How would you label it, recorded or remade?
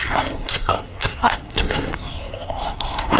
remade